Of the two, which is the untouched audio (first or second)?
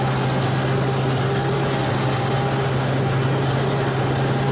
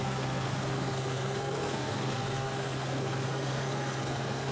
first